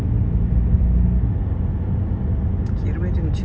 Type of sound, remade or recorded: recorded